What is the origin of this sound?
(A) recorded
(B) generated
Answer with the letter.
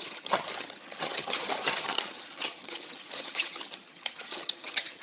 B